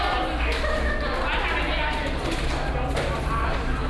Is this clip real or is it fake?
real